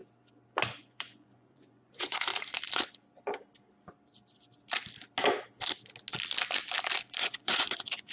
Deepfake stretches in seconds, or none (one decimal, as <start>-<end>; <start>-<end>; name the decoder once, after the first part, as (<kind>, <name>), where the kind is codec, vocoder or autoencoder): 0.8-2.3 (vocoder, Vocos); 7.2-8.1